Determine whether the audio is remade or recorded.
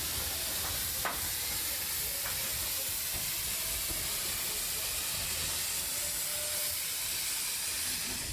recorded